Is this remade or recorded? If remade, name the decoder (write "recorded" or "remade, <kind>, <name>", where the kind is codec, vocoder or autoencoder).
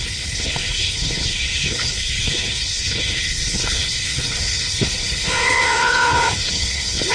remade, codec, HILCodec